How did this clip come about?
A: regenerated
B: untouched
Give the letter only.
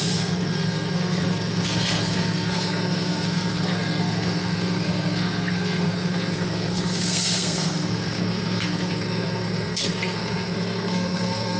A